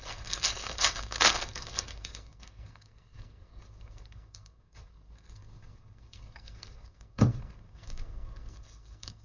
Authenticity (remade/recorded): remade